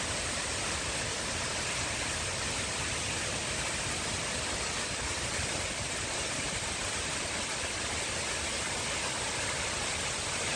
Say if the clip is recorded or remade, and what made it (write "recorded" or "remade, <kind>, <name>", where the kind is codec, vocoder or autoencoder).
recorded